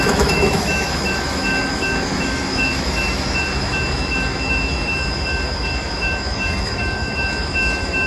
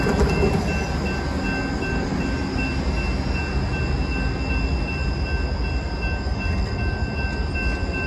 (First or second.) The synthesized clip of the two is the first